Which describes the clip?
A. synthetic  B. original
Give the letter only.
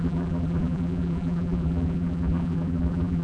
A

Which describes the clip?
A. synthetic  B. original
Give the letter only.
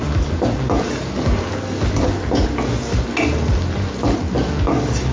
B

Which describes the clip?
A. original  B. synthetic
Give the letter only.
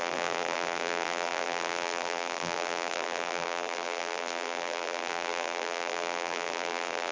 B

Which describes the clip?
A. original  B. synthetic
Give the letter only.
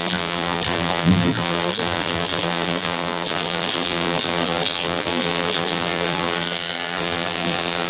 B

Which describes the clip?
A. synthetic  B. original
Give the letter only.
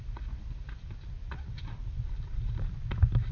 A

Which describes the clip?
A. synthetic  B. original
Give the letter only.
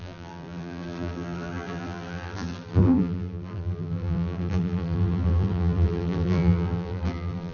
A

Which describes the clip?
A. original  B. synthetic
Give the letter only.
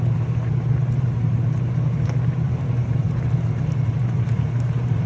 B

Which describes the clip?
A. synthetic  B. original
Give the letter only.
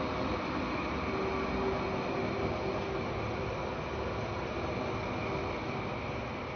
B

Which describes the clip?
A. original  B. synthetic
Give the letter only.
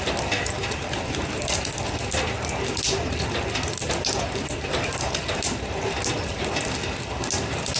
A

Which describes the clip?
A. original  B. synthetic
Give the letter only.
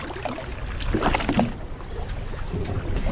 A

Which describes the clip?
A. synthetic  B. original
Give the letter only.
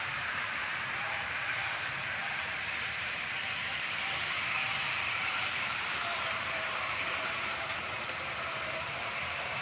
A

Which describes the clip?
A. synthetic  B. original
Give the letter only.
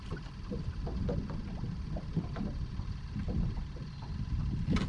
B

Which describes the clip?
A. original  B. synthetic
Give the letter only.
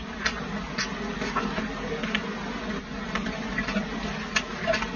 A